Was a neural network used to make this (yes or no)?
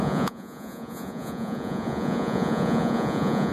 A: yes